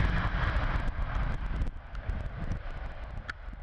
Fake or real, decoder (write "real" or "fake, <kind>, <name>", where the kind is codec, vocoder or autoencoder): real